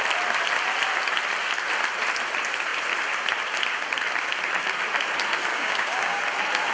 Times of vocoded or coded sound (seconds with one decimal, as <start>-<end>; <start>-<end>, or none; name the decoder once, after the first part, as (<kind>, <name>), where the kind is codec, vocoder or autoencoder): 5.5-6.2 (codec, DAC)